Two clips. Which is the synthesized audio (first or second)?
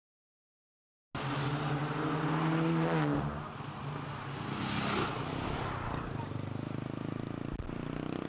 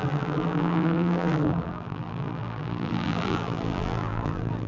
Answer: second